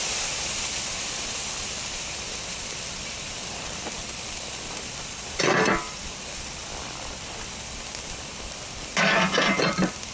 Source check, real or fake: fake